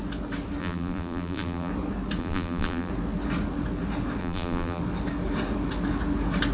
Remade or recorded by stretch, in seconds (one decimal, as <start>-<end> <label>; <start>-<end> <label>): 0.0-0.6 recorded; 0.6-1.7 remade; 1.7-2.2 recorded; 2.2-2.9 remade; 2.9-4.2 recorded; 4.2-4.8 remade; 4.8-6.5 recorded